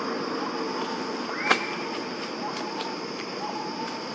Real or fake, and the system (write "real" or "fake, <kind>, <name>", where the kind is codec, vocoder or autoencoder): real